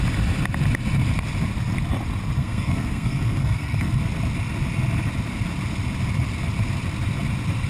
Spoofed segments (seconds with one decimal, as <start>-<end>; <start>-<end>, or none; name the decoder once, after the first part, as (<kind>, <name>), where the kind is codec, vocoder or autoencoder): 2.4-4.0 (codec, SNAC)